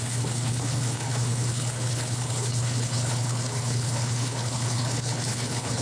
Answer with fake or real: fake